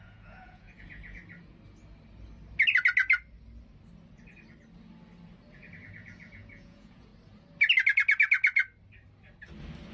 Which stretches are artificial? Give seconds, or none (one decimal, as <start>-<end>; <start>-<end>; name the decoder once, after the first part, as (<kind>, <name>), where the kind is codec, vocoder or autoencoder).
0.0-1.2 (vocoder, Vocos); 5.5-7.1